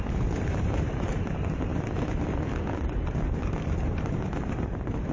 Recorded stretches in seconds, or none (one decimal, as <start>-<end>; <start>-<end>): 1.7-3.7